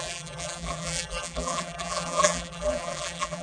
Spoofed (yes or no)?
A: yes